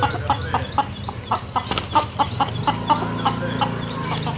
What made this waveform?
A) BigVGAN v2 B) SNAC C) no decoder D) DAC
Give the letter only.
C